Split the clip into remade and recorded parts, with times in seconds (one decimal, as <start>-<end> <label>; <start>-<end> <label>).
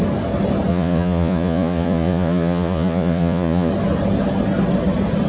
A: 0.0-0.7 recorded; 0.7-3.7 remade; 3.7-5.3 recorded